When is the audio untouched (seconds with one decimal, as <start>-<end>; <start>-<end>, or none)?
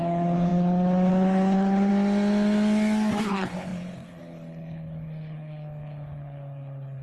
1.9-3.2